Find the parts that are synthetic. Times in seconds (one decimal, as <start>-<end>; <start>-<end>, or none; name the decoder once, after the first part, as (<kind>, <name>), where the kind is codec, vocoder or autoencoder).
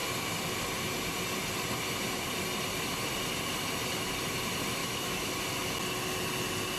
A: 4.8-5.3 (autoencoder, DAC-VAE)